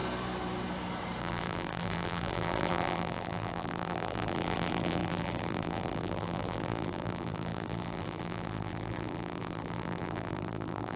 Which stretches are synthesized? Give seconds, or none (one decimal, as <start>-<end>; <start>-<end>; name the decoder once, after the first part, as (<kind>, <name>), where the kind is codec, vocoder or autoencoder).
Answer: 1.2-11.0 (vocoder, BigVGAN v2)